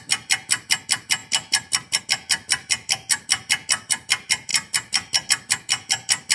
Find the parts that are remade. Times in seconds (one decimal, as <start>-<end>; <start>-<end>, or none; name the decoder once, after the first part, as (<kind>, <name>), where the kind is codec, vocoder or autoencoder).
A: none